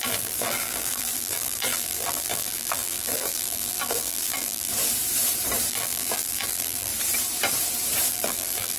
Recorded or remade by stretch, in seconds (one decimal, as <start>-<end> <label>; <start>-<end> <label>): 0.0-4.7 remade; 4.7-5.7 recorded; 5.7-6.9 remade; 6.9-8.1 recorded; 8.1-8.8 remade